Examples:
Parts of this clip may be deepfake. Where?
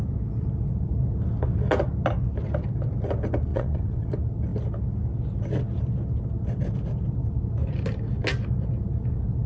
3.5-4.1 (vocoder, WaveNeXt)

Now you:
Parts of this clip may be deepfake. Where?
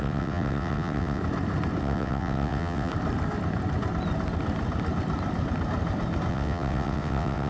0.0-1.2 (vocoder, WaveNeXt); 1.8-2.9; 6.3-7.5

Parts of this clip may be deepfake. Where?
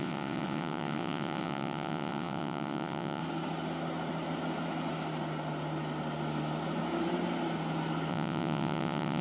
0.0-3.2 (vocoder, WaveNeXt); 8.1-9.2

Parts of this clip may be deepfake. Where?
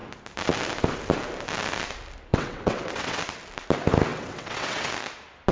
2.3-3.2 (vocoder, WaveNeXt); 4.1-4.9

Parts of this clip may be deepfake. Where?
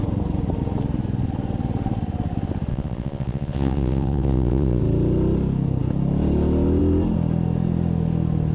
2.7-4.8 (vocoder, WaveNeXt)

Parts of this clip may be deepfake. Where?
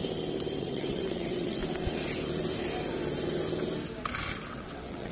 0.6-1.6 (vocoder, WaveNeXt); 4.5-5.1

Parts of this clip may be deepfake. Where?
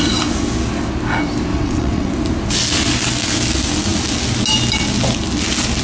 1.5-2.1 (vocoder, WaveNeXt)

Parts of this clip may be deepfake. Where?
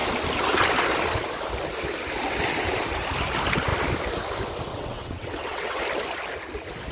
4.7-5.8 (vocoder, WaveNeXt)